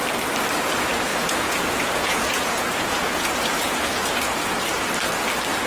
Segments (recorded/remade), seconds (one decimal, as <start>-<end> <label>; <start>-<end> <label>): 0.0-1.1 recorded; 1.1-4.5 remade; 4.5-5.7 recorded